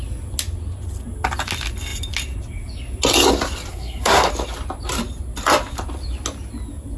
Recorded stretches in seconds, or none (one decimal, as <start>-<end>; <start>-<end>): 0.0-3.7; 4.3-7.0